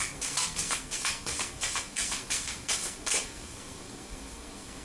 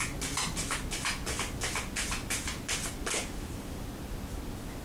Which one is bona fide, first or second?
second